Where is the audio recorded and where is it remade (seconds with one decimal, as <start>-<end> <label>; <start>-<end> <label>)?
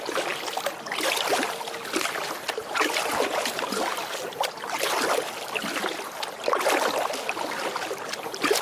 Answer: 0.0-8.6 recorded